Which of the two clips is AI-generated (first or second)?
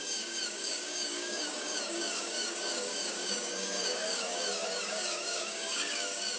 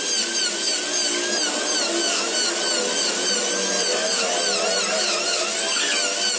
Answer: first